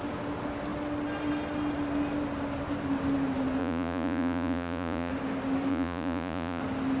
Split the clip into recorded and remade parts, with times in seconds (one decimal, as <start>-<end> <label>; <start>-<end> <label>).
0.0-3.6 recorded; 3.6-5.1 remade; 5.1-5.7 recorded; 5.7-6.6 remade; 6.6-7.0 recorded